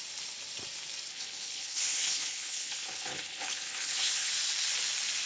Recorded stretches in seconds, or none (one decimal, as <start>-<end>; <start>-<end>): 0.0-1.1; 4.3-5.3